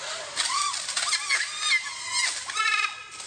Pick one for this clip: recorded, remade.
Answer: recorded